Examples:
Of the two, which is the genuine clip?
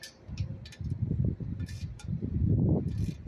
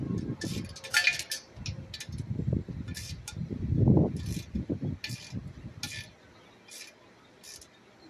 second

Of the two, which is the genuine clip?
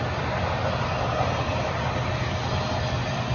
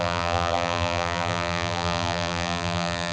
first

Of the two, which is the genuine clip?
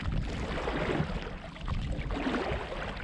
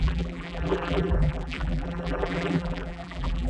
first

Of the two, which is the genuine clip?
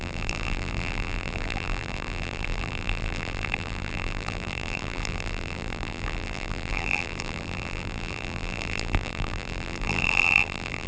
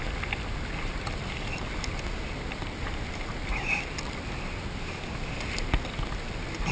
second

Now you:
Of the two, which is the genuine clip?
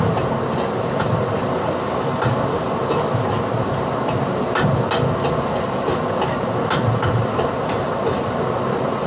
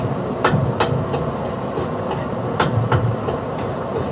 first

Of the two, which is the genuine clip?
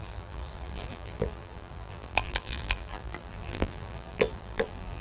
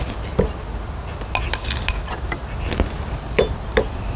second